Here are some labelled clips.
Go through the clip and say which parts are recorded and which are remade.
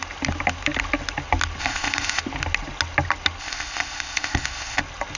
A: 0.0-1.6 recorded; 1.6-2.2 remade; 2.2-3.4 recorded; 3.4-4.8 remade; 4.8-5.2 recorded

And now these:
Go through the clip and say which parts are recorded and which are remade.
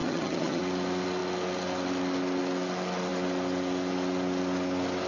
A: 0.0-0.6 remade; 0.6-5.1 recorded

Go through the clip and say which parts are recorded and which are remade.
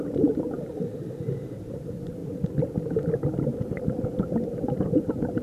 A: 0.0-2.2 remade; 2.2-3.7 recorded; 3.7-5.4 remade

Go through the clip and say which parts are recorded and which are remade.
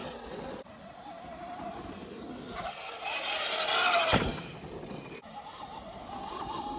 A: 0.0-6.8 recorded